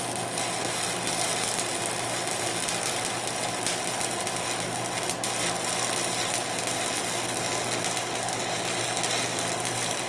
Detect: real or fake real